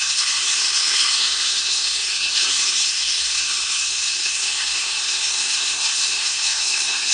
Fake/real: fake